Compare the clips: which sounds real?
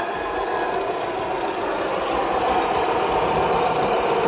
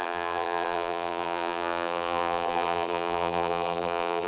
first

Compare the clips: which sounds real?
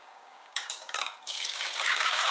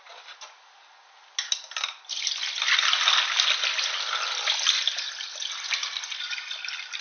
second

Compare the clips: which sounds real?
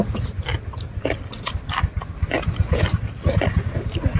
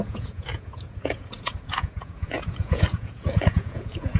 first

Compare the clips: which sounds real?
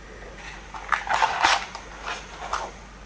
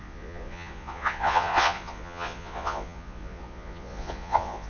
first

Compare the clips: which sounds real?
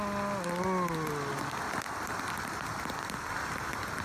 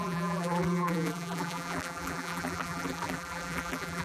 first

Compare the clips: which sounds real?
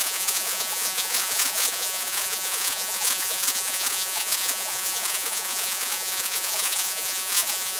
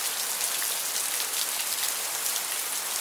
second